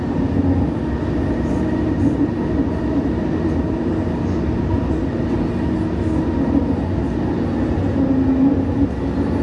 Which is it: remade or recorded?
recorded